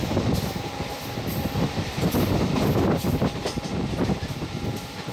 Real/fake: fake